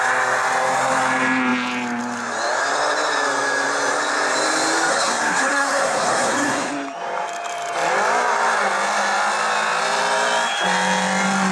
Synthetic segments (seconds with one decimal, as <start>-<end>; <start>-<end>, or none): 4.9-6.7